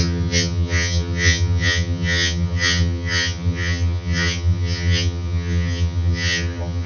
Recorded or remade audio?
remade